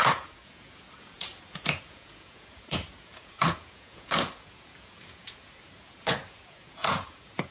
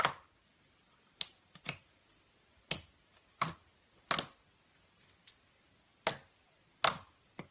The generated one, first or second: first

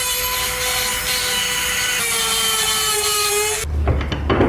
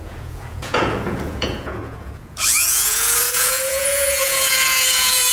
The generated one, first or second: second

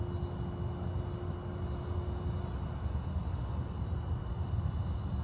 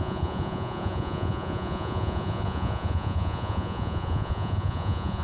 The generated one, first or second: second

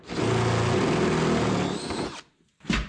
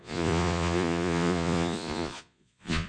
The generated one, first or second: second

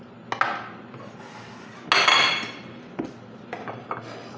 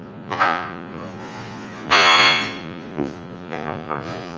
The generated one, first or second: second